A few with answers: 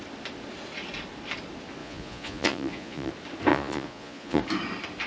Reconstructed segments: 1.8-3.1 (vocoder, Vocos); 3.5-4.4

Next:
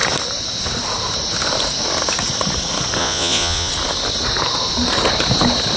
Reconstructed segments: 3.0-3.7 (vocoder, Vocos)

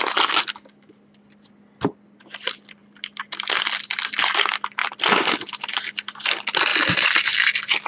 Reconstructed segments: none

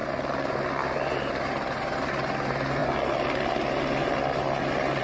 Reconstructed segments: none

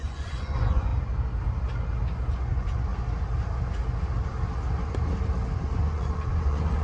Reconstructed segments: 0.0-0.9 (vocoder, Vocos); 2.3-2.9; 5.8-6.8

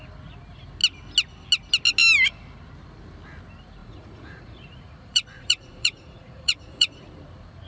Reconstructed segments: 3.8-7.0 (vocoder, Vocos)

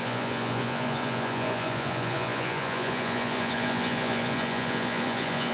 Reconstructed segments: 0.0-5.5 (vocoder, Vocos)

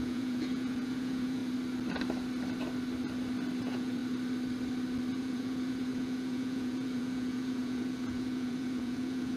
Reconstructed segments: 0.0-1.4 (vocoder, Vocos); 3.6-4.0; 5.1-9.4